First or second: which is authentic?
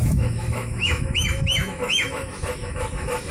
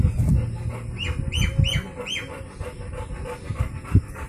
second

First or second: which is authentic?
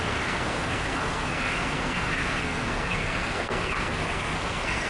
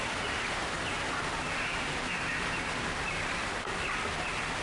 second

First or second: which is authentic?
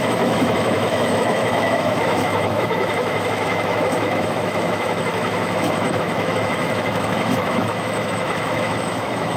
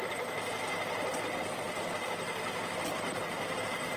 second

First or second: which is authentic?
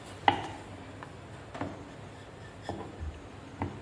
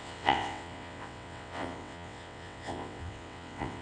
first